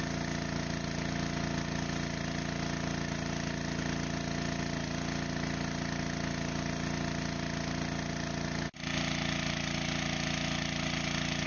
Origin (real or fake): real